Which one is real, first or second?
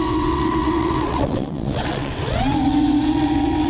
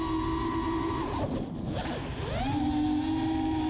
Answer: second